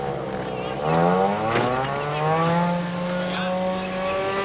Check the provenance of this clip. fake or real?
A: real